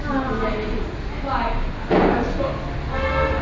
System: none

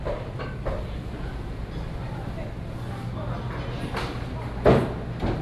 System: none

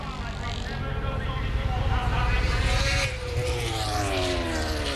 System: none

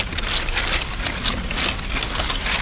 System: none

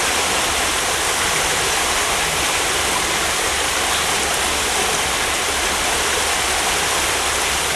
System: none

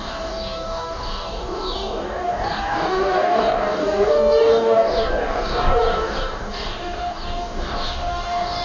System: codec, DAC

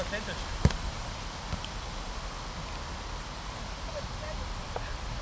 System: none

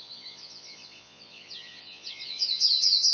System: vocoder, Vocos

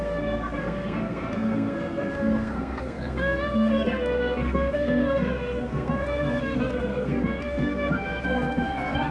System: codec, SNAC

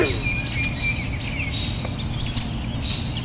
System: none